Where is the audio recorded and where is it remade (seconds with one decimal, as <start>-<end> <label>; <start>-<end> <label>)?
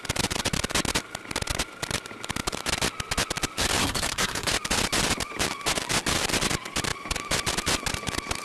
0.0-3.8 recorded; 3.8-4.5 remade; 4.5-8.4 recorded